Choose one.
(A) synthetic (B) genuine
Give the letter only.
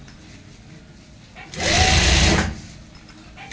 B